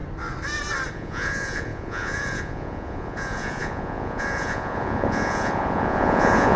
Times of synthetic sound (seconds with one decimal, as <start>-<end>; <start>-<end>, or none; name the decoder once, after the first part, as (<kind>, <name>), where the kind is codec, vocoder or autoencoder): 0.9-6.6 (vocoder, Vocos)

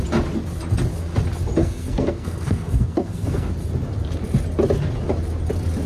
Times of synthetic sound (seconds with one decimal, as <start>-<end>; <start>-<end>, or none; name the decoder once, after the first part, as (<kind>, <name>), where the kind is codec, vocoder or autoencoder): 1.6-3.5 (codec, SNAC)

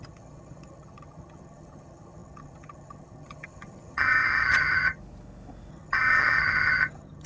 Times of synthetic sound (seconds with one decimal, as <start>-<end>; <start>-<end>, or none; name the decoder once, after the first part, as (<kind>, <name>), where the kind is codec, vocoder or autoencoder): 0.0-5.0 (vocoder, HiFi-GAN); 5.7-7.3

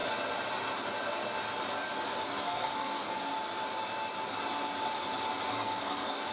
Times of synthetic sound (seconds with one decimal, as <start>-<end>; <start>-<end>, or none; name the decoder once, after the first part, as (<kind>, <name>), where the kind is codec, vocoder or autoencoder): 2.4-3.3 (codec, SNAC); 5.5-6.3

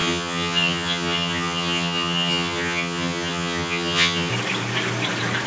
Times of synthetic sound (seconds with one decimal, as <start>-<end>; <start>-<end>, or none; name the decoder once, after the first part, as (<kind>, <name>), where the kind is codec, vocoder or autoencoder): 0.0-4.3 (vocoder, HiFi-GAN)

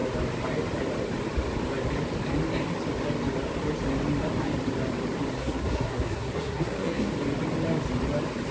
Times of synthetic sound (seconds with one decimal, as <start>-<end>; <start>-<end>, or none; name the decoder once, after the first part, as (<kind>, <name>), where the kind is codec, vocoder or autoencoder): 5.4-7.1 (codec, SNAC)

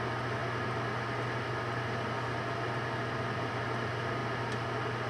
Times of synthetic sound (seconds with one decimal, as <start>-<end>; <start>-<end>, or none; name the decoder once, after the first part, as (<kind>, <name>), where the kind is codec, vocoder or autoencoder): none

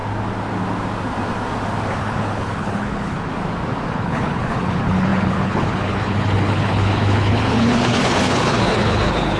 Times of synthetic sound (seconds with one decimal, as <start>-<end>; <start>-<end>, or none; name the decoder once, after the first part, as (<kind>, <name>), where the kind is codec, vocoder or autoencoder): 1.9-3.3 (codec, HILCodec); 3.9-9.4